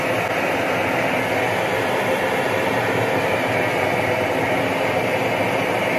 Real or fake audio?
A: real